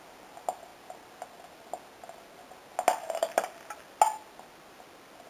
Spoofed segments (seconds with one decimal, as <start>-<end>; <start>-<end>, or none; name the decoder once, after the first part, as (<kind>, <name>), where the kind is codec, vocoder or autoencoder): none